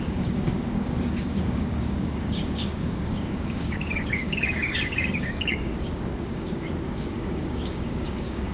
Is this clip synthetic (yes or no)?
yes